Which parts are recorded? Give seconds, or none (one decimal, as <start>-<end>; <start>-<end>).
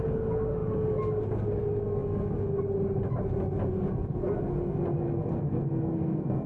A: 0.0-5.3